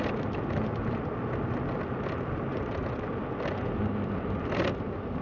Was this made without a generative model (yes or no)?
yes